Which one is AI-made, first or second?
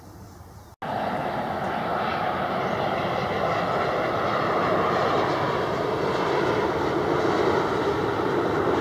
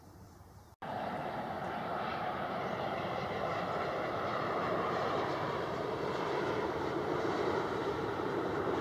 second